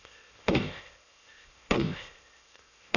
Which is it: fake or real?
fake